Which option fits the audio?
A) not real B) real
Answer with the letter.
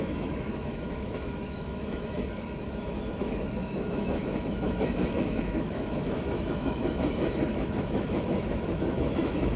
A